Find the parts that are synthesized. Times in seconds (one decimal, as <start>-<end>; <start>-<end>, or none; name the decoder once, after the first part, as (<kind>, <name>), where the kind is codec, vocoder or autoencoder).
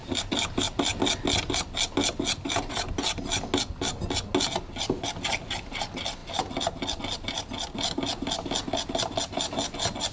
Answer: none